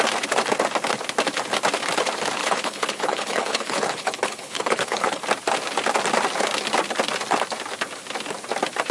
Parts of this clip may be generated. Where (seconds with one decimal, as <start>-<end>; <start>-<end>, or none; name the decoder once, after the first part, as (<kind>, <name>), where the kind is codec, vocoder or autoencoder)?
2.4-5.2 (codec, HILCodec)